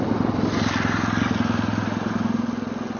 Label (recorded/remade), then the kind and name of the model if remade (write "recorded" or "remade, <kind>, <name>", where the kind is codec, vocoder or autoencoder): recorded